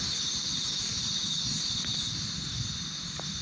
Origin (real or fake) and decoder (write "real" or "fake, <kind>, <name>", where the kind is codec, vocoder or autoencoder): real